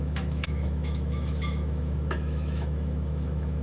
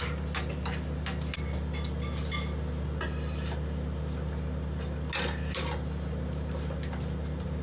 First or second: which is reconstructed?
first